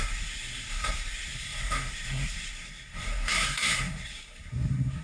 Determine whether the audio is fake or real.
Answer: fake